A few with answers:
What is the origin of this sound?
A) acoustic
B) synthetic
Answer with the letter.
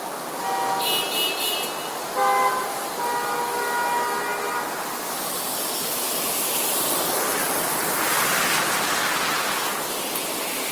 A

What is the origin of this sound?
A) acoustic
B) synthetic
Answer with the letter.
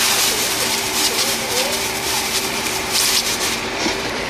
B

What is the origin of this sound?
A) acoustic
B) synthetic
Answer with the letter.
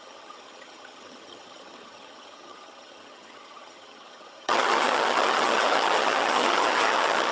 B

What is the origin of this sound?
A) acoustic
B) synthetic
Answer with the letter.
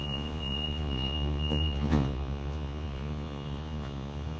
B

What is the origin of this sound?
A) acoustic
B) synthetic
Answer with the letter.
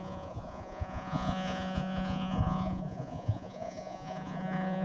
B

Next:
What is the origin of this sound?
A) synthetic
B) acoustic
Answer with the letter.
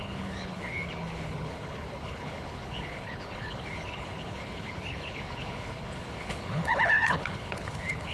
A